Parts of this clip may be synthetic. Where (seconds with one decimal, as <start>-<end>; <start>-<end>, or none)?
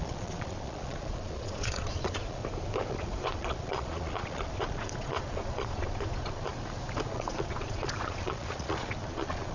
0.0-2.4; 2.9-6.5; 7.1-9.5